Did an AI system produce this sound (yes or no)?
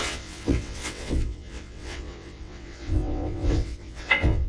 yes